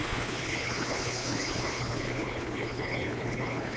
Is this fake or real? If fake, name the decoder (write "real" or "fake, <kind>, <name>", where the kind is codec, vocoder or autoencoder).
fake, codec, HILCodec